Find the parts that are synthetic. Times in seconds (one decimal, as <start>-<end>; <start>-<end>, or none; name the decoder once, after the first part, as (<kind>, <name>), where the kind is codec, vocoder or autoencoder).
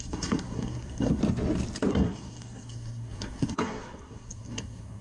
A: 0.0-1.2 (codec, SNAC); 1.9-5.0